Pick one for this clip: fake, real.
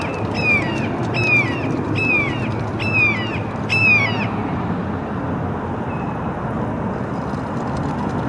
real